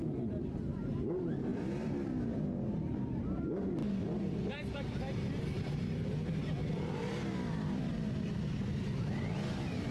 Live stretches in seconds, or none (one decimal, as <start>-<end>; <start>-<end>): 0.0-1.5; 2.4-3.8; 5.0-7.0